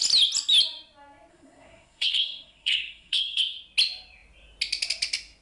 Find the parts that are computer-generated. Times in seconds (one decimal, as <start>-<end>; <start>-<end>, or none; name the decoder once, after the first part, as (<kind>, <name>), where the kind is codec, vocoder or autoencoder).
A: 1.3-3.4 (codec, SNAC)